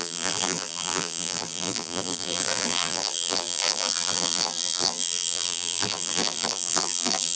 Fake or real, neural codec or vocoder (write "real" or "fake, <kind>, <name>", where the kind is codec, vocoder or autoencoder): fake, vocoder, BigVGAN v2